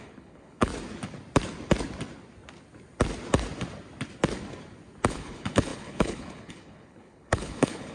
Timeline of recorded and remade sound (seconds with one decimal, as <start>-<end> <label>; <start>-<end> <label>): 0.0-0.7 remade; 0.7-5.1 recorded; 5.1-7.9 remade